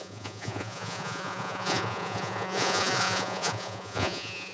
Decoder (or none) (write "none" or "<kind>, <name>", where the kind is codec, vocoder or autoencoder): vocoder, Vocos